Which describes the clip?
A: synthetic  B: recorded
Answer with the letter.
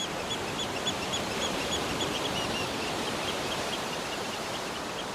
A